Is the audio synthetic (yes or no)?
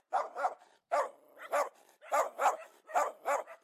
no